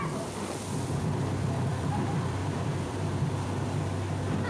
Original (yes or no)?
no